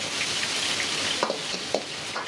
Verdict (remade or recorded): recorded